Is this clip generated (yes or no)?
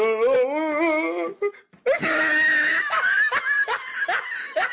no